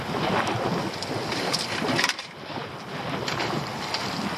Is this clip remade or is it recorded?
recorded